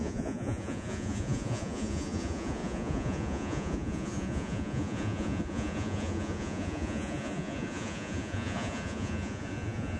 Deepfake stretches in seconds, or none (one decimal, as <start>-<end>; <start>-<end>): 0.0-10.0